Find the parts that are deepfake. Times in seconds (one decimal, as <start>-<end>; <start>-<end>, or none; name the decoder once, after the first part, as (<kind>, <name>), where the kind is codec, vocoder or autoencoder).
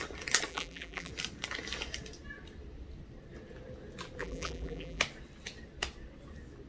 0.5-1.1 (vocoder, BigVGAN v2); 4.2-5.0